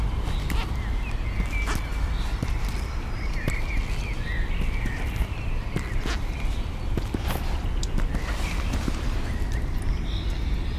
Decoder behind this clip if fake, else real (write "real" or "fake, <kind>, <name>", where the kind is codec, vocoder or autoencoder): real